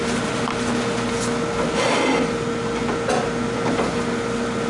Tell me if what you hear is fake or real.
real